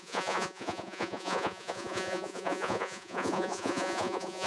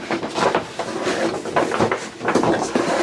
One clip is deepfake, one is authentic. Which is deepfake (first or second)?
first